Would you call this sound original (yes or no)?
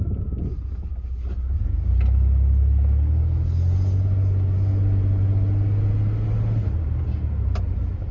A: yes